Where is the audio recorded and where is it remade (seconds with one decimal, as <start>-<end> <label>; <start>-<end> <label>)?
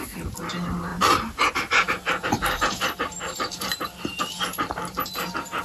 0.0-0.9 recorded; 0.9-3.9 remade; 3.9-4.5 recorded; 4.5-5.6 remade